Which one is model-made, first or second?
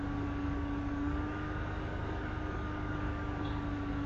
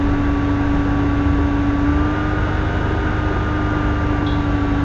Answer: first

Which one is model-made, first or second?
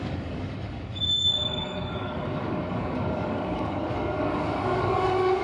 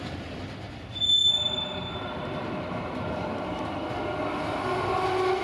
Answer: first